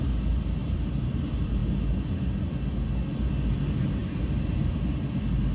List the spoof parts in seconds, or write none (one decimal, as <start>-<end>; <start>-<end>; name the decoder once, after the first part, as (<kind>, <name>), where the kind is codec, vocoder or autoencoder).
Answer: 0.6-1.2 (vocoder, BigVGAN v2); 4.0-4.7